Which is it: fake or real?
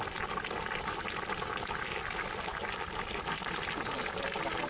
real